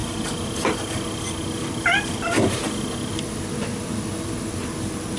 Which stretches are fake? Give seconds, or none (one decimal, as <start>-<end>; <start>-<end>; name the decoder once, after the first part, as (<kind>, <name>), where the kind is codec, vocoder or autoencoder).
none